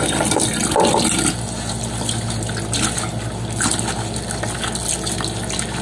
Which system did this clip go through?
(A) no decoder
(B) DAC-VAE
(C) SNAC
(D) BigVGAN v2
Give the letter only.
A